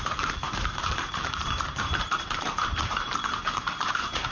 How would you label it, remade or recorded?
remade